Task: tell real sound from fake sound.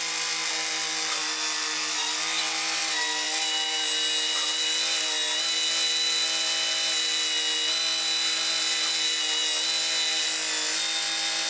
real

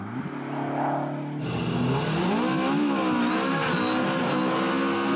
real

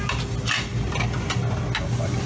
real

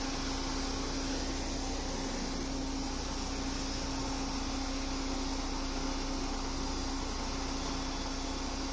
real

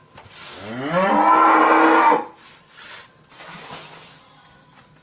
real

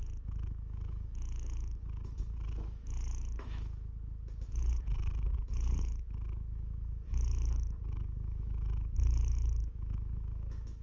fake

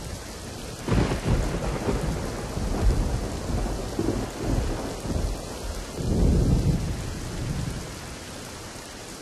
real